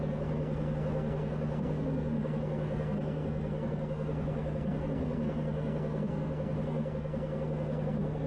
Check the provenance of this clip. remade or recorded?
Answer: remade